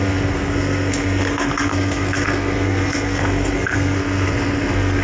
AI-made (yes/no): yes